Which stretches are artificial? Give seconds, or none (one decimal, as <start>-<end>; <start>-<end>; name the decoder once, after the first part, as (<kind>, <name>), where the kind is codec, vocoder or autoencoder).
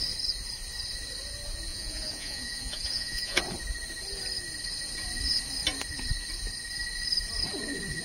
1.7-3.4 (vocoder, Vocos)